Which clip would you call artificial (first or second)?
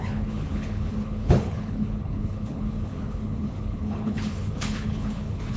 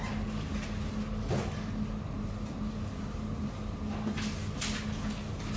first